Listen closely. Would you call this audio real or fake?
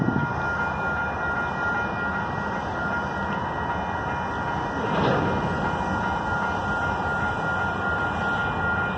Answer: real